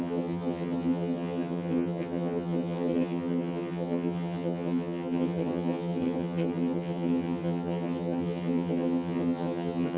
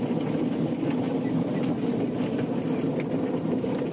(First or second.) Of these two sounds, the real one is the second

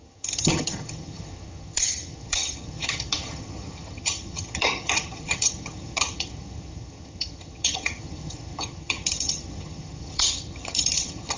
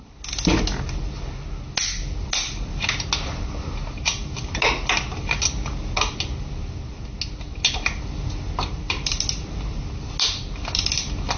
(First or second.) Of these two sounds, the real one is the second